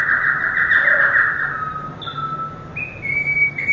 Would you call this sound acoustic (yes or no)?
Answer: yes